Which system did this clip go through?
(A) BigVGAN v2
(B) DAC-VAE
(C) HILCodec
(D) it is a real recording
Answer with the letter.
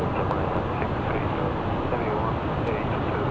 D